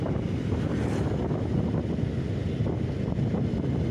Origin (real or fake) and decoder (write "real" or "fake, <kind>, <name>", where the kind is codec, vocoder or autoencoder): real